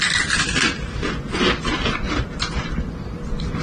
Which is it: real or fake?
real